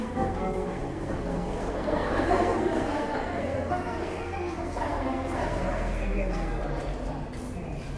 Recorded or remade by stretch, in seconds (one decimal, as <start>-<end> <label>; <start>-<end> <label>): 0.0-6.6 remade; 6.6-8.0 recorded